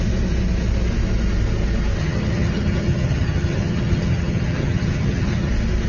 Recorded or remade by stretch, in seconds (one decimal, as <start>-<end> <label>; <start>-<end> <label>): 0.0-2.0 recorded; 2.0-5.5 remade; 5.5-5.9 recorded